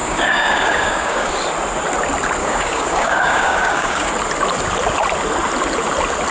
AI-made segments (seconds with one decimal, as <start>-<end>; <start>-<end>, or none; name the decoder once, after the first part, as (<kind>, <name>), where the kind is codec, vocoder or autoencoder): 0.0-1.3 (codec, DAC); 2.4-4.1

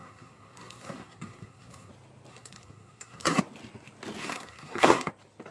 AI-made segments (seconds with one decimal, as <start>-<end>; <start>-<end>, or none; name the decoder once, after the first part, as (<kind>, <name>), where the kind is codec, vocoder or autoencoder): 0.0-1.9 (codec, SNAC); 2.3-3.4; 4.2-5.1

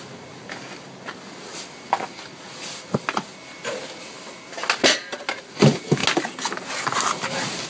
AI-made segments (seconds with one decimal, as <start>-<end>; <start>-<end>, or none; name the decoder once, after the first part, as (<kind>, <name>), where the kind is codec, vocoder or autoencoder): none

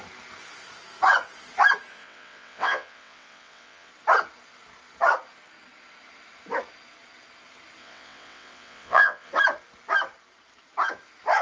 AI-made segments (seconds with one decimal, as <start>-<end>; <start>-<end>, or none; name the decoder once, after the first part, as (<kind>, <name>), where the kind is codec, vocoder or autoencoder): 1.9-3.9 (vocoder, WaveNeXt); 7.8-9.3

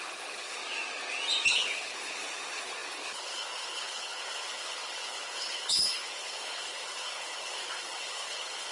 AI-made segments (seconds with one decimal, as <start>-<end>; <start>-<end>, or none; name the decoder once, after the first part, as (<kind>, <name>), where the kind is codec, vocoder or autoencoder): 0.0-0.6 (codec, HILCodec); 1.5-8.7

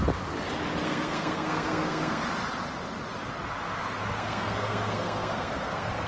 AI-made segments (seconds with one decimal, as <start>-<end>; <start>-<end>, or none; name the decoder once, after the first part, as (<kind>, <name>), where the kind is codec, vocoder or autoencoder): 0.8-2.2 (codec, SNAC); 4.0-6.1

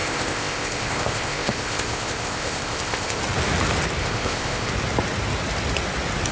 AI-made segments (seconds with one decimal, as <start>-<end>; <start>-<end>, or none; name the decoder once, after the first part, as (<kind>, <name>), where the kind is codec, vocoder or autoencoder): 0.0-3.2 (codec, ZipCodec); 4.0-4.7

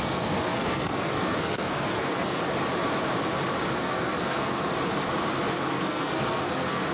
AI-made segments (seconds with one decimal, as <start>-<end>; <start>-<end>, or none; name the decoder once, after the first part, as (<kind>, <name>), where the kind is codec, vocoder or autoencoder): 0.0-2.4 (codec, SNAC); 3.8-4.7; 5.5-6.9